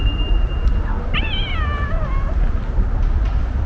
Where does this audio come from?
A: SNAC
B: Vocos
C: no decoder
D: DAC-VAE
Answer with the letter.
C